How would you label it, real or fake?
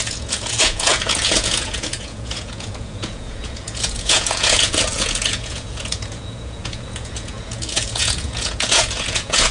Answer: fake